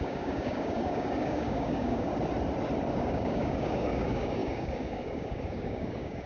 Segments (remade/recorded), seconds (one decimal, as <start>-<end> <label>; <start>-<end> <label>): 0.0-2.1 remade; 2.1-2.9 recorded; 2.9-6.3 remade